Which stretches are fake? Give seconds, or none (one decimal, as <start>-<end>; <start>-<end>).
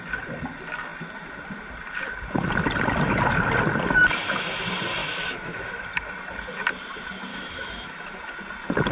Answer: 5.0-5.8; 7.3-8.2